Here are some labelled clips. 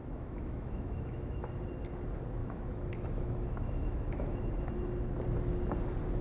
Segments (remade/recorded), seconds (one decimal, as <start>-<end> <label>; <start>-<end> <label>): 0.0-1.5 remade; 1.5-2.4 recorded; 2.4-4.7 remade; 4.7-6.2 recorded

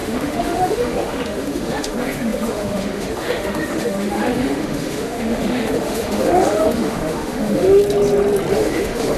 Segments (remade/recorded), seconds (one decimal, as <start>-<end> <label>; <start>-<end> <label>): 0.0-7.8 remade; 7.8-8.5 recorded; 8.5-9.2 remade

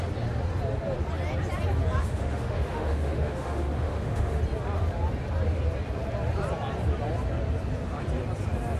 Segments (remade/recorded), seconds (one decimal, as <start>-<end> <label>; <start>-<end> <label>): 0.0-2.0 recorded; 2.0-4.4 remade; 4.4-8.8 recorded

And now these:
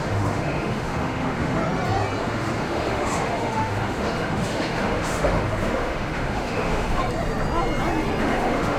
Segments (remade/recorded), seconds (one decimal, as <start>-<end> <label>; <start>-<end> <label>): 0.0-1.6 remade; 1.6-2.2 recorded; 2.2-7.0 remade; 7.0-8.2 recorded; 8.2-8.8 remade

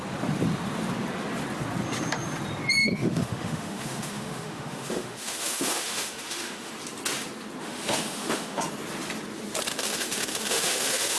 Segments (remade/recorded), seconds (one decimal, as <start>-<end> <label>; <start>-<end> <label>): 0.0-2.8 recorded; 2.8-6.7 remade; 6.7-7.6 recorded; 7.6-8.6 remade; 8.6-9.7 recorded; 9.7-11.2 remade